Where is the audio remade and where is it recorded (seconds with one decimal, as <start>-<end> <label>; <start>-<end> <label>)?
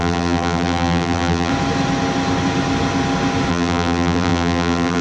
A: 0.0-1.5 remade; 1.5-3.5 recorded; 3.5-5.0 remade